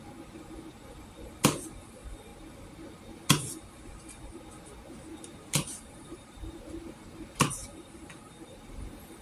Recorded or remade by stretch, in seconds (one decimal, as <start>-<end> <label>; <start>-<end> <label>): 0.0-5.1 recorded; 5.1-9.2 remade